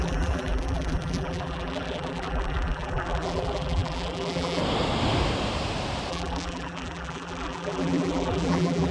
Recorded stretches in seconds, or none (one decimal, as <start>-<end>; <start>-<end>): 4.6-6.1